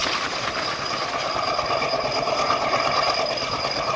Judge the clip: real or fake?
real